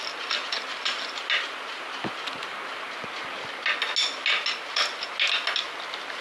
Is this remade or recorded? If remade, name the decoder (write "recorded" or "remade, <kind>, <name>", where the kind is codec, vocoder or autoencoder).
recorded